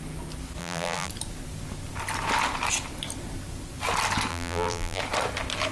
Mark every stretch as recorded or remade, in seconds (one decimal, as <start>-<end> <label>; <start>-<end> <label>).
0.0-0.6 recorded; 0.6-1.1 remade; 1.1-4.3 recorded; 4.3-5.0 remade; 5.0-5.7 recorded